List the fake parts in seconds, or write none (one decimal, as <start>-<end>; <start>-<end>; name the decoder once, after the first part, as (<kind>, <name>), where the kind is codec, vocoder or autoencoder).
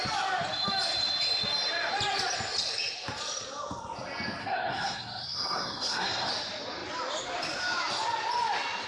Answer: 4.4-6.3 (codec, SNAC)